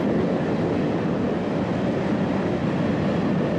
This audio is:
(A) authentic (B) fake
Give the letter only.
A